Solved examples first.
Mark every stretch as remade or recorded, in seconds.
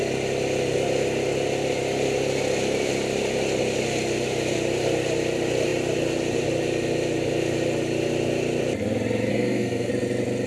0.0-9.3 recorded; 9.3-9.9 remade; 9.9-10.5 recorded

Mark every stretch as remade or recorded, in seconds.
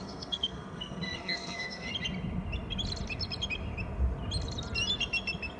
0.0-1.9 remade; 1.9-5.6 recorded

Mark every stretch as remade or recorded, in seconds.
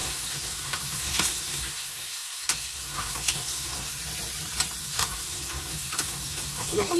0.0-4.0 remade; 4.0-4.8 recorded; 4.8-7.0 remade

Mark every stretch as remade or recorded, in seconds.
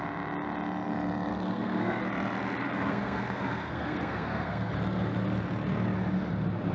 0.0-1.3 recorded; 1.3-2.0 remade; 2.0-2.6 recorded; 2.6-4.7 remade; 4.7-6.7 recorded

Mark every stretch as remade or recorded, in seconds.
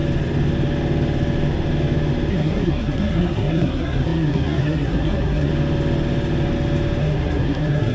0.0-2.3 recorded; 2.3-5.5 remade; 5.5-7.0 recorded; 7.0-7.9 remade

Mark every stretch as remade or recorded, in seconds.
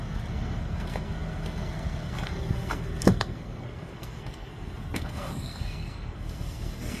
0.0-7.0 remade